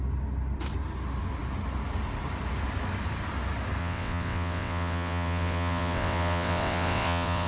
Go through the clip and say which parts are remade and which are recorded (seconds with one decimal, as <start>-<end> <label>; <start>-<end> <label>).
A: 0.0-3.8 recorded; 3.8-7.5 remade